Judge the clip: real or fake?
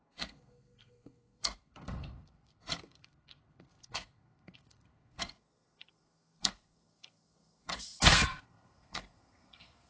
fake